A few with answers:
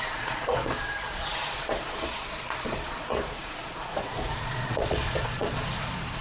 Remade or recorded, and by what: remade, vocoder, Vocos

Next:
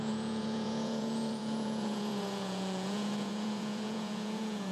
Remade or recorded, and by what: remade, vocoder, Vocos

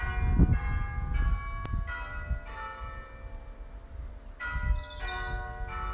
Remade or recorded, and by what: recorded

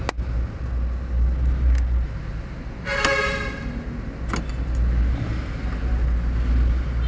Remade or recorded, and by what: recorded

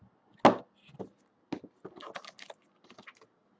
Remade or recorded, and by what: recorded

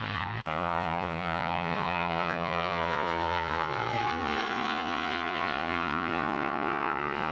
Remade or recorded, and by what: remade, vocoder, Vocos